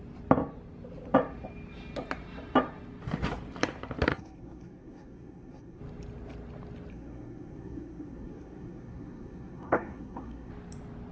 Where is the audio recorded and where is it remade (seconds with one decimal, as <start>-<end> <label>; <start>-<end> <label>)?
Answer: 0.0-4.1 recorded; 4.1-5.8 remade; 5.8-6.9 recorded; 6.9-10.5 remade; 10.5-11.1 recorded